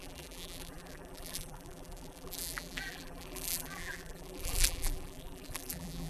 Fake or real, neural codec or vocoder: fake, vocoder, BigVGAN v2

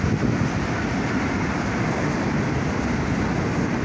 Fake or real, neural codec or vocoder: real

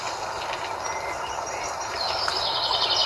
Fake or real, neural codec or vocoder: real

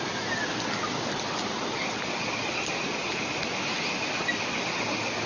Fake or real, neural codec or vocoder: real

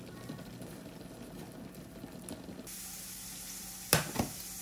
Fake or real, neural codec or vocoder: real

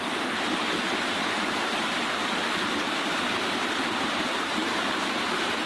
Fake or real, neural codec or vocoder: fake, vocoder, BigVGAN v2